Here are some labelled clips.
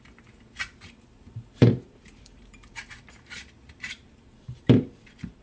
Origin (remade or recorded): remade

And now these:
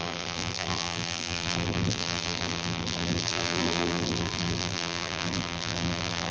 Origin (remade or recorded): remade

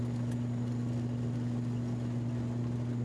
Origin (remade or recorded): recorded